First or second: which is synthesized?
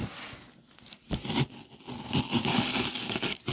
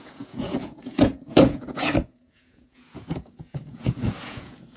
second